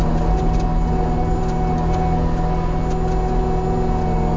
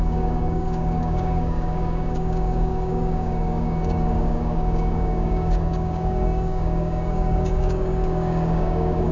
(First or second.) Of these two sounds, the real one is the first